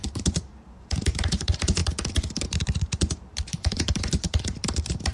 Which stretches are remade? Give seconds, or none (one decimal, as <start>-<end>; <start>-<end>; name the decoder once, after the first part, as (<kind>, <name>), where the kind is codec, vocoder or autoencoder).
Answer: 0.0-1.8 (vocoder, BigVGAN v2); 2.4-5.1